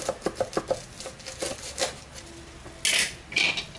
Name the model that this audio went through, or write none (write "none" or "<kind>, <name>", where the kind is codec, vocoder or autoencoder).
none